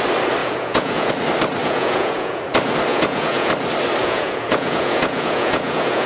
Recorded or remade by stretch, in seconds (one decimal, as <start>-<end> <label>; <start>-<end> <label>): 0.0-0.4 recorded; 0.4-1.1 remade; 1.1-1.6 recorded; 1.6-2.4 remade; 2.4-2.9 recorded; 2.9-3.5 remade; 3.5-4.0 recorded; 4.0-6.1 remade